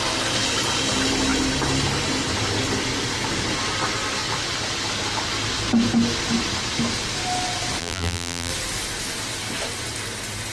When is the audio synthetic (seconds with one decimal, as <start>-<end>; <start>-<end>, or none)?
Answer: 7.8-8.5